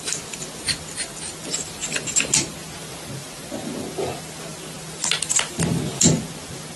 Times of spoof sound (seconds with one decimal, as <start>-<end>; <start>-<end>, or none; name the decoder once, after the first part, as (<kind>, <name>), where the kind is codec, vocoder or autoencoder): none